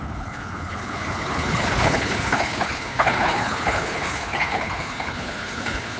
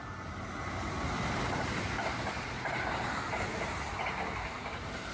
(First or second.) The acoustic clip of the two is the second